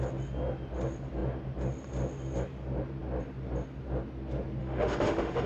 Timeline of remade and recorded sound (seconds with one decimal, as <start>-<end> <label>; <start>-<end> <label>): 0.0-4.6 recorded; 4.6-5.5 remade